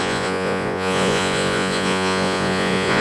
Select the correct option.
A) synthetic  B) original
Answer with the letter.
A